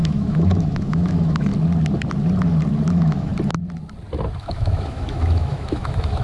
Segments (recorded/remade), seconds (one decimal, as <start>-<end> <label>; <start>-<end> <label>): 0.0-1.5 remade; 1.5-2.9 recorded; 2.9-3.3 remade; 3.3-4.4 recorded; 4.4-6.2 remade